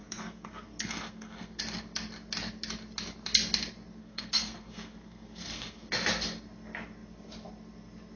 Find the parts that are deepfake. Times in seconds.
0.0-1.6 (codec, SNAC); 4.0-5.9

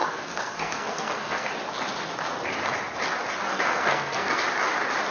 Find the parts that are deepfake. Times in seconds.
0.0-1.5 (codec, SNAC); 3.5-4.4